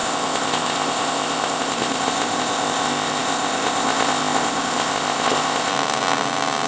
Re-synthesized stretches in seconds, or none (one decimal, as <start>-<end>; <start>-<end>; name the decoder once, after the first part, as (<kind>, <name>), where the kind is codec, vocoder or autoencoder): 0.0-5.7 (codec, ZipCodec)